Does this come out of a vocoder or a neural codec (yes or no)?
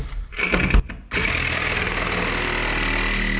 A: no